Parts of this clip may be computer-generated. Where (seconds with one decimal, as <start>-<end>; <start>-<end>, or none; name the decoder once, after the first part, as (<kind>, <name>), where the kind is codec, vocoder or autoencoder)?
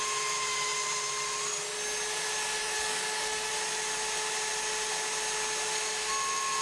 2.6-3.5 (codec, DAC)